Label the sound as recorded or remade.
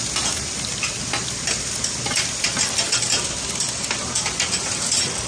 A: recorded